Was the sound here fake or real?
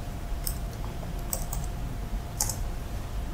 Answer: fake